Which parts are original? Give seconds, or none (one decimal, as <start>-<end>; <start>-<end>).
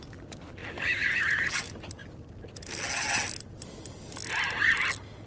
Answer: 0.0-5.3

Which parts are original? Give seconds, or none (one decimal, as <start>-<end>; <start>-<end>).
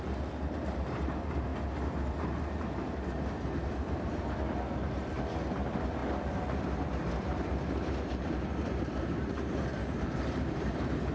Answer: none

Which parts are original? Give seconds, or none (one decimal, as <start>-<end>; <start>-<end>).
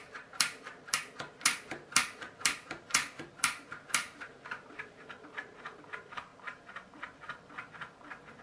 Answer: none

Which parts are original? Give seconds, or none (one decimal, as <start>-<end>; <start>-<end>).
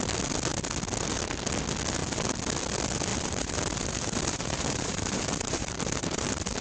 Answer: 0.0-3.1